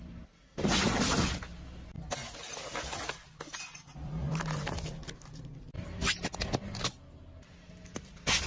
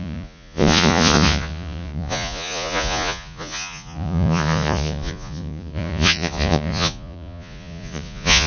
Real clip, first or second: first